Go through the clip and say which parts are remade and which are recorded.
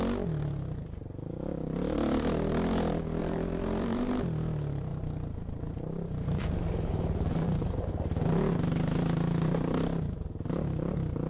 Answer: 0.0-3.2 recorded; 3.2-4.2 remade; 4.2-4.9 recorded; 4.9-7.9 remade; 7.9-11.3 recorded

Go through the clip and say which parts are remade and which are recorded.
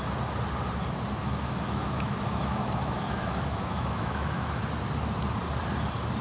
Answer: 0.0-1.2 recorded; 1.2-4.6 remade; 4.6-6.2 recorded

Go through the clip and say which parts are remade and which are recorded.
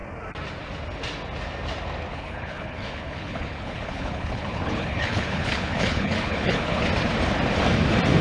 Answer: 0.0-2.1 recorded; 2.1-6.8 remade; 6.8-8.2 recorded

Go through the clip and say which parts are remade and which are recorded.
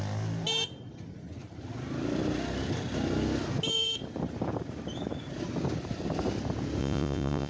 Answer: 0.0-6.8 recorded; 6.8-7.5 remade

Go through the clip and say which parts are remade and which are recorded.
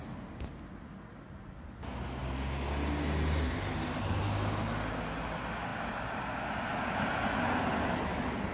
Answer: 0.0-8.5 recorded